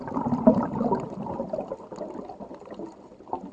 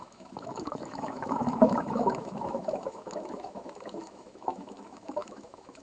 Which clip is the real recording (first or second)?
first